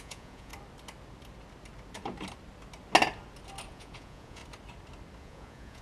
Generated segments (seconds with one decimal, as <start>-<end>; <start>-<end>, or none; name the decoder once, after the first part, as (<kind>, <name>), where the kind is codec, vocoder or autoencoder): 0.0-0.5 (vocoder, Vocos); 3.7-4.4; 5.2-5.8